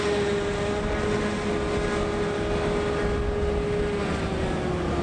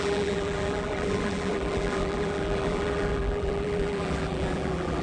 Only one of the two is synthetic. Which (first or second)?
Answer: second